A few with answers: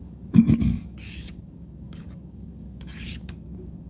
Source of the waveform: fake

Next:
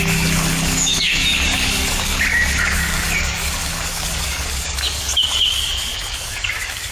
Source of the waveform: fake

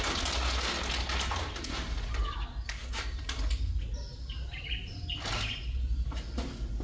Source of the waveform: real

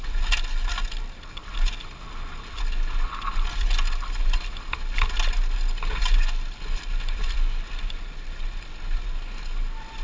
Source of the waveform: real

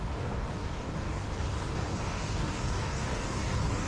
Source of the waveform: fake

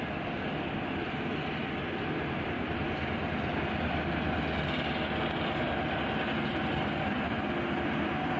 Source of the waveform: real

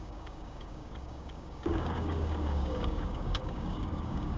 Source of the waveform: fake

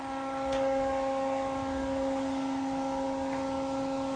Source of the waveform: fake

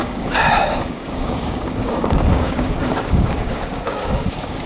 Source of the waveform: fake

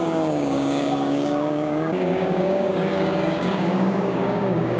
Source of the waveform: fake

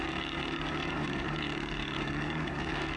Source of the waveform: fake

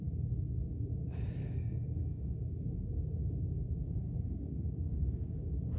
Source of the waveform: fake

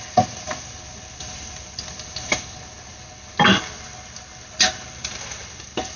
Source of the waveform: real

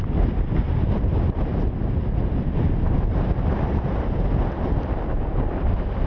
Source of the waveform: real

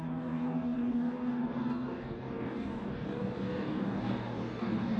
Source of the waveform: fake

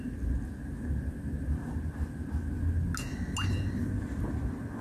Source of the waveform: real